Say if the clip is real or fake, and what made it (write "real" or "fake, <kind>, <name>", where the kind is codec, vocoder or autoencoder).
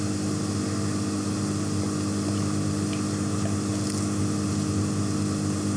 real